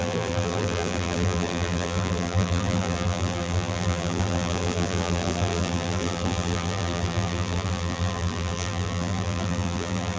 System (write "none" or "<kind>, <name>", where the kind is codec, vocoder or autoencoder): vocoder, BigVGAN v2